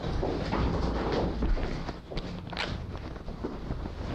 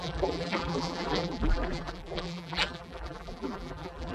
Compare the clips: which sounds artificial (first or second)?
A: second